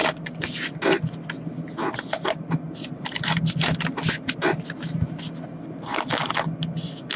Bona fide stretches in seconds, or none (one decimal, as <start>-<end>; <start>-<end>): 0.0-7.2